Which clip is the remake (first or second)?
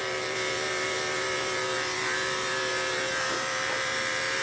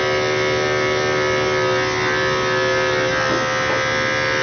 first